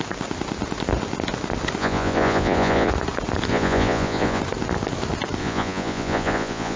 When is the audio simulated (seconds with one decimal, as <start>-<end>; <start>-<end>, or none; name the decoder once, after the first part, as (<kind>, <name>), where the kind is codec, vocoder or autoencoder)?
1.8-2.9 (vocoder, Vocos); 3.5-4.4; 5.4-6.8